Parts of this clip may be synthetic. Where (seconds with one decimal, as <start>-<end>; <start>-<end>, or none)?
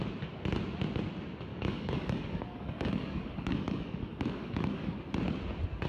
1.5-5.0